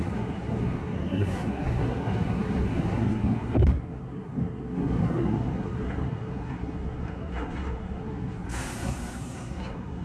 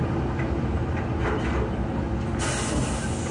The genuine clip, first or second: second